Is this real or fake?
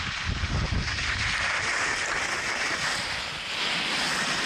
real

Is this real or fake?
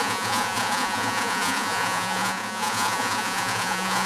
fake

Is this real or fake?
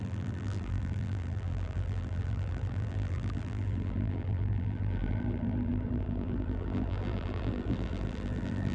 fake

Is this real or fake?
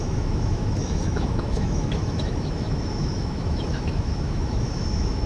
fake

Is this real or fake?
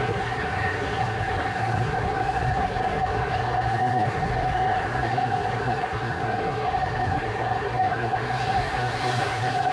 fake